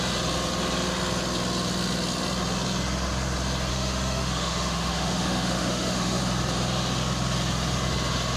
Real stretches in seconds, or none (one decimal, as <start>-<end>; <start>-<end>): 0.0-3.7; 6.2-8.4